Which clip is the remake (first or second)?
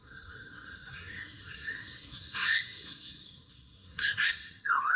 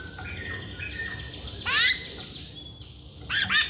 first